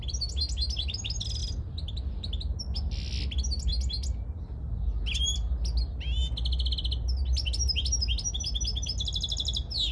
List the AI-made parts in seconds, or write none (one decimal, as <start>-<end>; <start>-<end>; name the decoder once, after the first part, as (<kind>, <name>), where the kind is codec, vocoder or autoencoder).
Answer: 1.4-2.1 (vocoder, BigVGAN v2)